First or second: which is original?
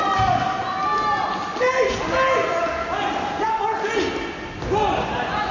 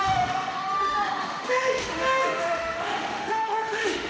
first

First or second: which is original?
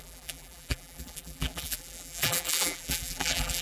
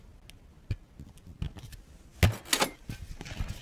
second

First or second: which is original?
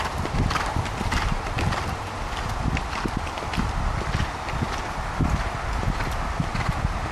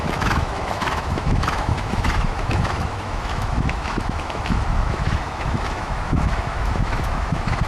first